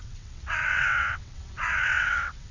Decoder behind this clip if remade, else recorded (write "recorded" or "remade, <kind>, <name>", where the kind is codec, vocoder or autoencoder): remade, vocoder, WaveNeXt